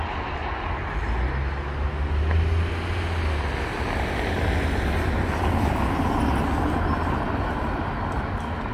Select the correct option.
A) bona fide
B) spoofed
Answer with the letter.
A